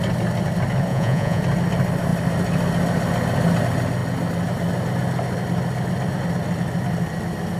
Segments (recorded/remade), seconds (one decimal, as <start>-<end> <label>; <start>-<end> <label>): 0.0-0.9 recorded; 0.9-1.4 remade; 1.4-7.6 recorded